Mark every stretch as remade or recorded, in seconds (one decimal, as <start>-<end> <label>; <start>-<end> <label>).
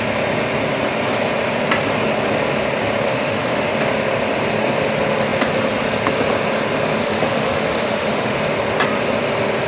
0.0-3.1 recorded; 3.1-3.7 remade; 3.7-7.0 recorded; 7.0-8.4 remade; 8.4-9.7 recorded